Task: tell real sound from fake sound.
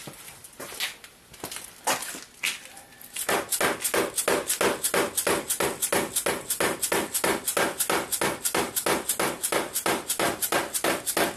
real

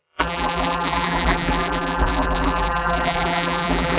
fake